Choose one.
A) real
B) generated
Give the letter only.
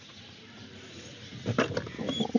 B